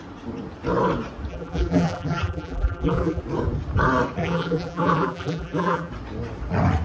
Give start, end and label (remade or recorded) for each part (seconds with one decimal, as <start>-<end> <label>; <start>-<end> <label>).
0.0-1.3 recorded; 1.3-3.2 remade; 3.2-4.2 recorded; 4.2-5.9 remade; 5.9-6.8 recorded